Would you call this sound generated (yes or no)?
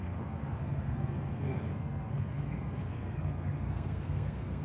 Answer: yes